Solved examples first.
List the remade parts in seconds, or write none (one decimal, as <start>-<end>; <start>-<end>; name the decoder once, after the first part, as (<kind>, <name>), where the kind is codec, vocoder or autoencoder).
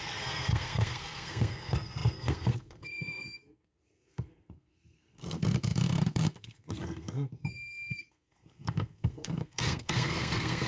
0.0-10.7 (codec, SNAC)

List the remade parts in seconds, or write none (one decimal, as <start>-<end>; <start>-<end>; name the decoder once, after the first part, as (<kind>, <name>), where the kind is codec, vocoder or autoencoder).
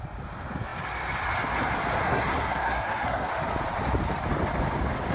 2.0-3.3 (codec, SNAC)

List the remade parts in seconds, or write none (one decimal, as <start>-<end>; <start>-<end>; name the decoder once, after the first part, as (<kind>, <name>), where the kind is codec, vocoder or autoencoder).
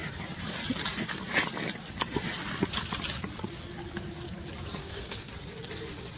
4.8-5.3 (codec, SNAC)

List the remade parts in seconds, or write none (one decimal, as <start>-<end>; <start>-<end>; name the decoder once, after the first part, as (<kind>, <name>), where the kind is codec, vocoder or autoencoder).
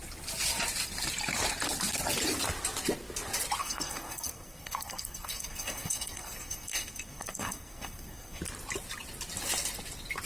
3.6-8.4 (codec, SNAC)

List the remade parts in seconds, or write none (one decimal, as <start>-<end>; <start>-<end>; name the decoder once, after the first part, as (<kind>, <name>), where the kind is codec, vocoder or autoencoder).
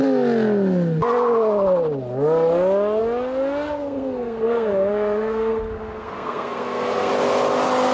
3.8-7.1 (codec, SNAC)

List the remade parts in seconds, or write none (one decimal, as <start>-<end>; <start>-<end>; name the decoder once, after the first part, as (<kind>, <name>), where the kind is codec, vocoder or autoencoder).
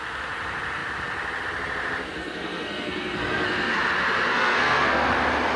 2.2-3.8 (codec, SNAC); 4.3-5.1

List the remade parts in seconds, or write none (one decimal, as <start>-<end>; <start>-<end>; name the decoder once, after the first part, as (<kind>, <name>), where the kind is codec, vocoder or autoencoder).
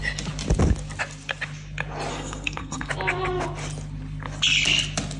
2.1-2.9 (codec, SNAC)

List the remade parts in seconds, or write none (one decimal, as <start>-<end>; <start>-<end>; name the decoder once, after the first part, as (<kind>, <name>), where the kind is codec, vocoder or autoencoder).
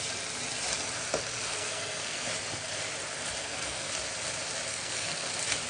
1.5-2.3 (codec, SNAC); 3.4-3.9; 4.7-5.3